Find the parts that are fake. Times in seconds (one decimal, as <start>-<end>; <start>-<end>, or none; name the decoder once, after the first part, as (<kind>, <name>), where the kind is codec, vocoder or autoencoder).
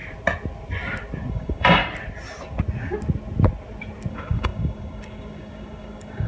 1.3-1.8 (codec, DAC); 4.1-6.3